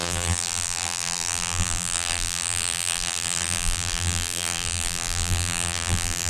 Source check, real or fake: fake